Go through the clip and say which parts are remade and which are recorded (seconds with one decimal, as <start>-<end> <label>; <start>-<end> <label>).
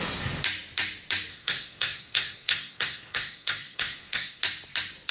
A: 0.0-1.3 recorded; 1.3-4.4 remade; 4.4-5.1 recorded